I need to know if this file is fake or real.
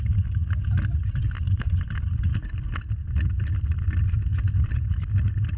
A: real